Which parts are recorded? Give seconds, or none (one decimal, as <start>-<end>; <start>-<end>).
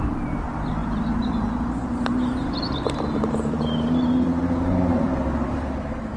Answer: none